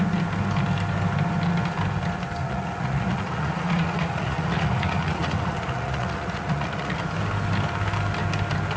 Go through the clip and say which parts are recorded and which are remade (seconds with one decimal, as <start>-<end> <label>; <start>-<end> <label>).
0.0-2.4 recorded; 2.4-7.0 remade; 7.0-8.8 recorded